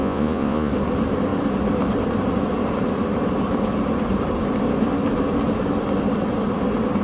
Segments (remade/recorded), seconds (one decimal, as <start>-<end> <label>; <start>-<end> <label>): 0.0-0.7 remade; 0.7-7.0 recorded